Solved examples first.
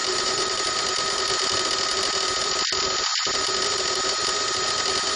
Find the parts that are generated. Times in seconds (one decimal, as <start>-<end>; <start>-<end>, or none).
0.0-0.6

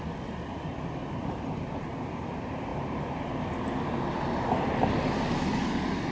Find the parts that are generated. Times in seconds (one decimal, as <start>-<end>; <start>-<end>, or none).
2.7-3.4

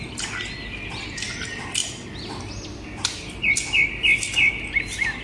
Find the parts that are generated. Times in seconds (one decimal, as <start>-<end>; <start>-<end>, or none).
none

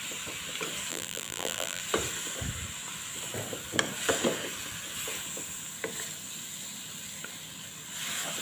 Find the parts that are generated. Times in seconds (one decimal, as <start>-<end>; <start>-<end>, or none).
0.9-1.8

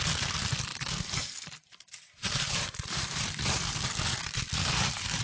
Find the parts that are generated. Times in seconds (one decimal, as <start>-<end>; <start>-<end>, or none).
0.7-3.8; 4.6-5.2